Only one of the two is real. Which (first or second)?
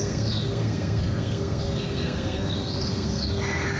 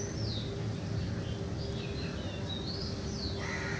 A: second